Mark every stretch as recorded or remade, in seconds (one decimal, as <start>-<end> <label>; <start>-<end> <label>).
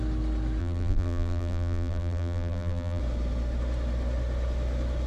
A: 0.0-0.6 recorded; 0.6-3.0 remade; 3.0-5.1 recorded